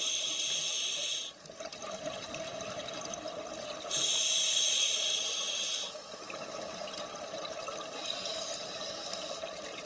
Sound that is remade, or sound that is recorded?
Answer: recorded